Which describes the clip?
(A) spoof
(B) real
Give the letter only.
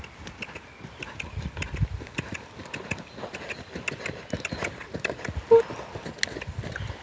B